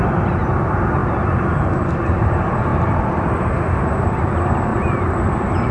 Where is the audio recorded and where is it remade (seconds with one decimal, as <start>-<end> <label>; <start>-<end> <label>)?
0.0-2.7 recorded; 2.7-3.4 remade; 3.4-4.7 recorded; 4.7-5.7 remade